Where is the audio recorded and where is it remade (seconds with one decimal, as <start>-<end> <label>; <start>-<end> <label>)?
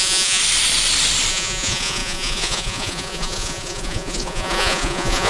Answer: 0.0-0.4 remade; 0.4-1.3 recorded; 1.3-5.3 remade